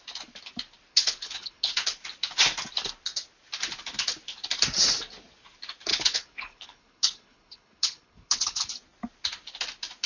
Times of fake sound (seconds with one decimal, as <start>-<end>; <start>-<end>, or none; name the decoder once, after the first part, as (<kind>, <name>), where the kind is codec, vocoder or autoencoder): 0.9-1.7 (codec, HILCodec); 5.9-8.7